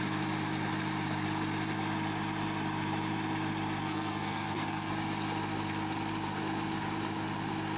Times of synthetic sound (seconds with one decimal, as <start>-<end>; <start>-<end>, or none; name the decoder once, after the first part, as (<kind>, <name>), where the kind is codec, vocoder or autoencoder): 3.8-4.9 (codec, SNAC)